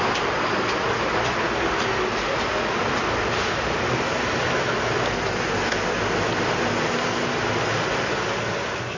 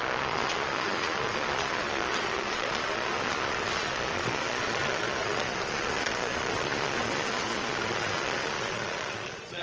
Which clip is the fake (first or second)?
second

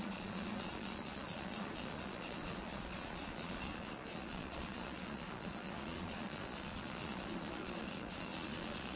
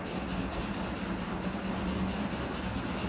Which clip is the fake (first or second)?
first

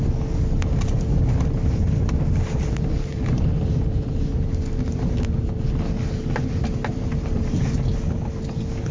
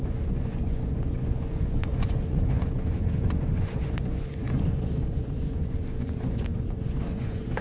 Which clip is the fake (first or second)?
second